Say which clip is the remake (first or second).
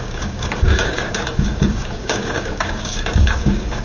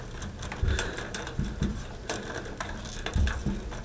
first